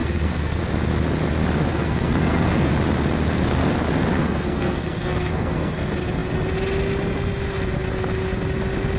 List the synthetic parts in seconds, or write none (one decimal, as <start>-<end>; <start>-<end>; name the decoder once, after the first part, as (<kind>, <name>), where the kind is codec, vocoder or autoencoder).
0.0-0.6 (codec, SNAC); 1.7-2.7; 4.1-5.7